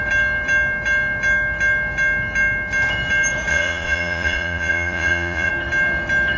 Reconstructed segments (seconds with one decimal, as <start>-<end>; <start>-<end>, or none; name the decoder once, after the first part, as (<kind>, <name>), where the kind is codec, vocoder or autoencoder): 3.5-5.5 (vocoder, Vocos)